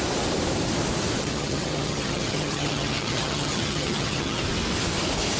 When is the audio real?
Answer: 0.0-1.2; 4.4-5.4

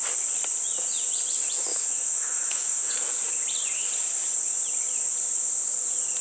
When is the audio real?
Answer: 0.0-1.7; 2.9-6.2